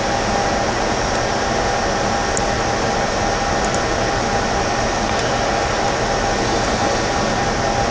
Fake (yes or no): no